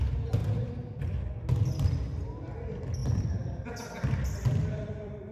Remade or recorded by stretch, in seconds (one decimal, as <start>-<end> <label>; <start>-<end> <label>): 0.0-3.0 recorded; 3.0-3.8 remade; 3.8-4.6 recorded; 4.6-5.3 remade